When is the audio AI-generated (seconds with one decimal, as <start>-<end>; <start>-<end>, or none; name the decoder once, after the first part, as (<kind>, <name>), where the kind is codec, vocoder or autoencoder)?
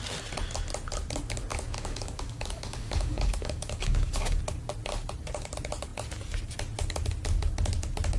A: 1.5-4.4 (codec, DAC)